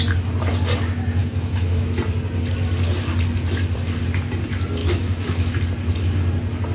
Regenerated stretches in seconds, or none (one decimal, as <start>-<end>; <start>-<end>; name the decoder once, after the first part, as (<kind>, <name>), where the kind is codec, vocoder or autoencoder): 1.2-2.0 (autoencoder, DAC-VAE); 4.8-5.6